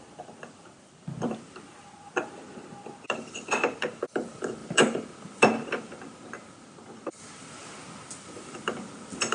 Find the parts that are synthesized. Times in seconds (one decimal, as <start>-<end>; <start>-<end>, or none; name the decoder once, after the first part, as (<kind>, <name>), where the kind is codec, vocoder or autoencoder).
0.0-9.3 (vocoder, BigVGAN v2)